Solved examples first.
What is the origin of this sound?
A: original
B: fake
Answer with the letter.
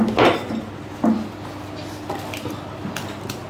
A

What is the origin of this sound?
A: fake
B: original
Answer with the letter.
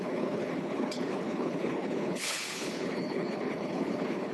A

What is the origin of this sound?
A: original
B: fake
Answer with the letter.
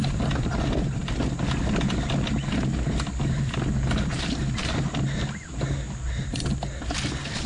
A